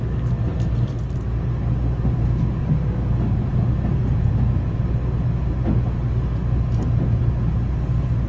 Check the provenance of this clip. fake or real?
real